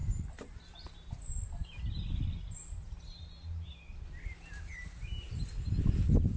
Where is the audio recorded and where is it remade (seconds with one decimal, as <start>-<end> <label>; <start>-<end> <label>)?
0.0-6.4 recorded